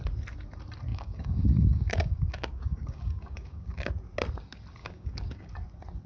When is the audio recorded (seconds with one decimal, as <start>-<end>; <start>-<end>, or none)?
0.0-0.9; 3.9-4.8; 5.5-6.1